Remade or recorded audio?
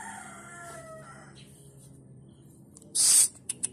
remade